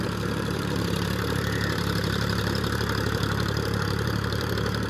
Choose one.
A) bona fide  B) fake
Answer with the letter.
B